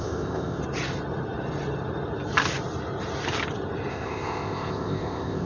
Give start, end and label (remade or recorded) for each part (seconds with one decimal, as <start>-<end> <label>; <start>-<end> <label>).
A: 0.0-0.6 remade; 0.6-3.9 recorded; 3.9-5.5 remade